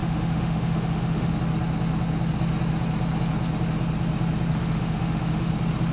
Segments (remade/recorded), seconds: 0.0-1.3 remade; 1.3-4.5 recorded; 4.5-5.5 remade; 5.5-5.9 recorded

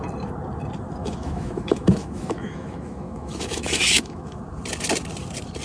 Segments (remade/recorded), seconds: 0.0-1.0 recorded; 1.0-4.4 remade; 4.4-5.6 recorded

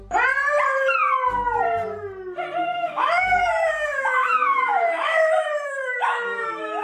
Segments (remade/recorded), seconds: 0.0-2.7 recorded; 2.7-6.8 remade

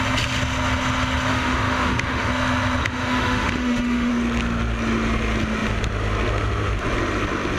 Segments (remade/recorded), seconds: 0.0-1.3 recorded; 1.3-2.3 remade; 2.3-2.8 recorded; 2.8-4.1 remade; 4.1-7.6 recorded

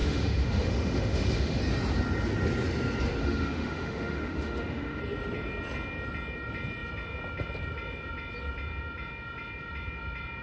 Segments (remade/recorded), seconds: 0.0-1.6 remade; 1.6-3.2 recorded; 3.2-5.0 remade; 5.0-10.4 recorded